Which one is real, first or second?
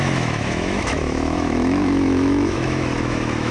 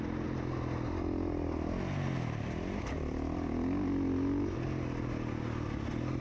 second